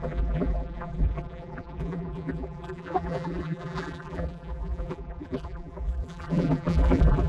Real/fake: fake